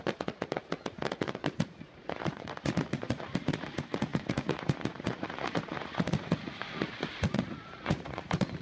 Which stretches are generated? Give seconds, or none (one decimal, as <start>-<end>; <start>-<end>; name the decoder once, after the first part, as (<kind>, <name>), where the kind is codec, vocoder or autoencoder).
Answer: 0.0-8.6 (vocoder, Vocos)